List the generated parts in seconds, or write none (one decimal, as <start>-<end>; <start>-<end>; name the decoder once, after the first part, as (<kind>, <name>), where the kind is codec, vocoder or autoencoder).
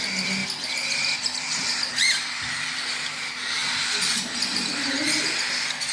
0.4-3.0 (vocoder, BigVGAN v2)